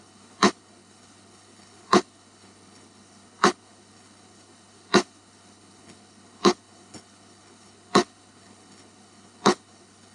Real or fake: fake